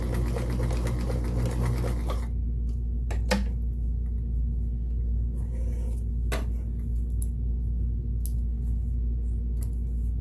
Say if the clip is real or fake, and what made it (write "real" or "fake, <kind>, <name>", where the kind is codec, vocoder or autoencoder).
real